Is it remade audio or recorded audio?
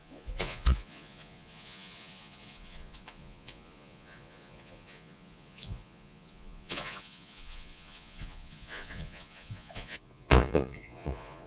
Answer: remade